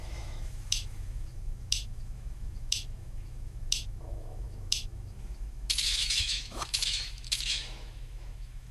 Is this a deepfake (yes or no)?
yes